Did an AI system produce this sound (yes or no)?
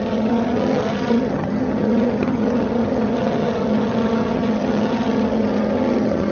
yes